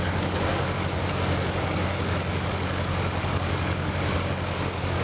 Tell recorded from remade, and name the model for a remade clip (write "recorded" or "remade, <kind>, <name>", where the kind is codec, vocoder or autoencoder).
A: remade, codec, DAC